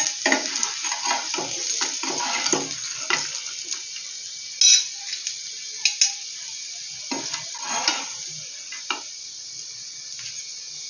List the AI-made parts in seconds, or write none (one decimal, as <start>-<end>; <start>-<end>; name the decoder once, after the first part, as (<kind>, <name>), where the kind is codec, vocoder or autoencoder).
none